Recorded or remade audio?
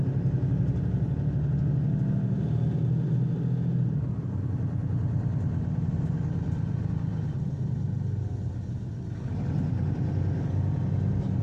recorded